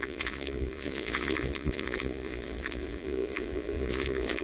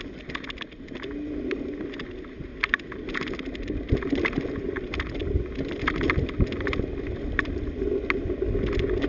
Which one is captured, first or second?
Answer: second